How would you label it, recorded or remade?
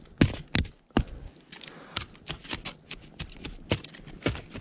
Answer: recorded